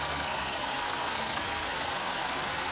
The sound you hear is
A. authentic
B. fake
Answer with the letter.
B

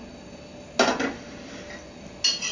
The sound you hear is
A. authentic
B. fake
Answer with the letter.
A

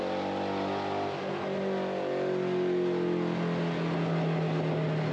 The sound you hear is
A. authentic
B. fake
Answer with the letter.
A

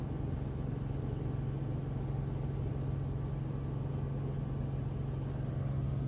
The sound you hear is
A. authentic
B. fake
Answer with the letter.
A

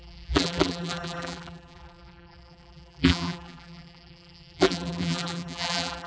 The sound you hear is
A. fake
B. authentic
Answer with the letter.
A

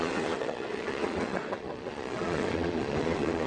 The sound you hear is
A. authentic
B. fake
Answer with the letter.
B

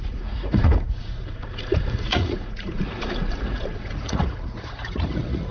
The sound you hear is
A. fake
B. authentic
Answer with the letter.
A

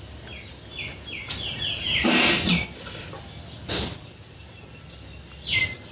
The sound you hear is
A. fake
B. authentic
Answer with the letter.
B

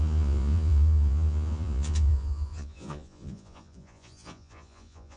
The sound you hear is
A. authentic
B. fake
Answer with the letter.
B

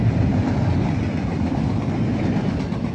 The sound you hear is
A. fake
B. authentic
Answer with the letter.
B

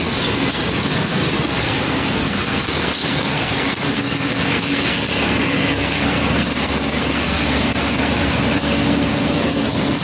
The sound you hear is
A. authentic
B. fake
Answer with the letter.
B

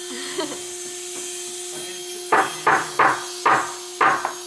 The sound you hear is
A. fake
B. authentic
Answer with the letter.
B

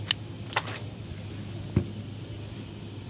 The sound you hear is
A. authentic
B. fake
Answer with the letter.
A